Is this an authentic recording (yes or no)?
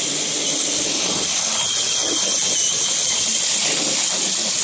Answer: yes